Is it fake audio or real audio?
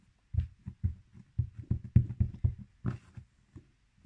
real